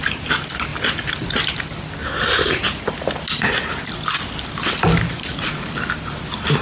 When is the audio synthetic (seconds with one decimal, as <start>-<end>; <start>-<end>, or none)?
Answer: none